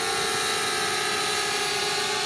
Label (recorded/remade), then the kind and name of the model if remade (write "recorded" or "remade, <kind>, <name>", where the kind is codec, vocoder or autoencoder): recorded